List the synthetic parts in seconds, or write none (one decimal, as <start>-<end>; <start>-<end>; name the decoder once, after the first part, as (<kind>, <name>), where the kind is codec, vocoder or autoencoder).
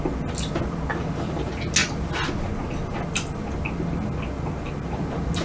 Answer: none